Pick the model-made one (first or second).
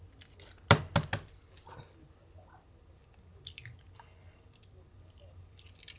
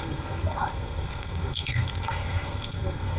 second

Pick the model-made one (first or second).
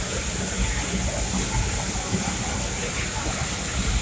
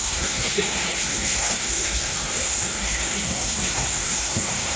second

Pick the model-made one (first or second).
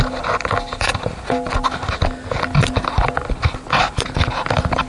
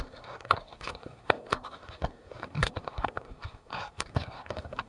second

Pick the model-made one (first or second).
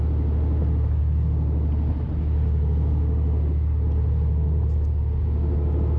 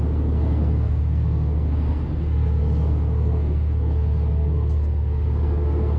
second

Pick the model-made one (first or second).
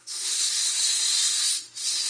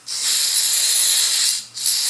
first